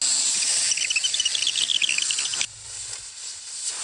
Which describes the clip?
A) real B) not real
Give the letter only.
A